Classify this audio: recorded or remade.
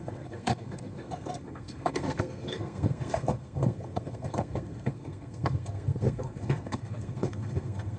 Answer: remade